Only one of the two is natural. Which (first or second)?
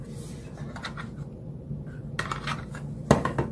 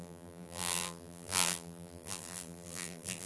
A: first